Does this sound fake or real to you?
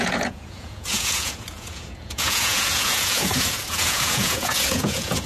fake